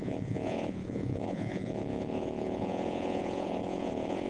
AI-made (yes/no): yes